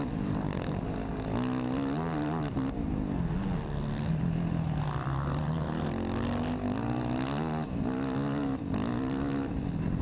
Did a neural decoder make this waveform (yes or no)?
no